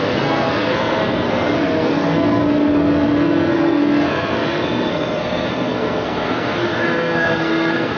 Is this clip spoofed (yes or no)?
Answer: yes